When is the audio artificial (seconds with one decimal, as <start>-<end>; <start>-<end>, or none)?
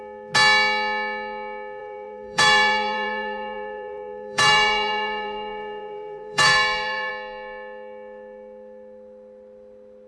1.8-7.1